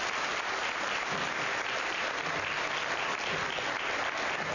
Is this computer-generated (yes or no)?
no